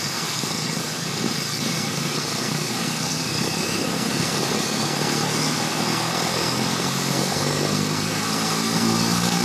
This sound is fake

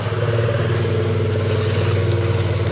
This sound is real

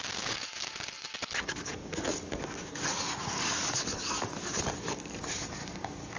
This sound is fake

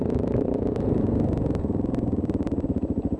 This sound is real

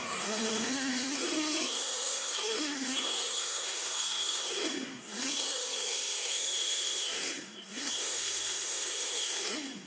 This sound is fake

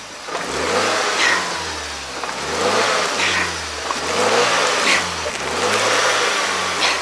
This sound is real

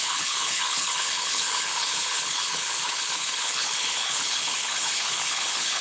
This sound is fake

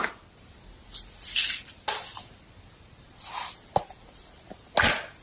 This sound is real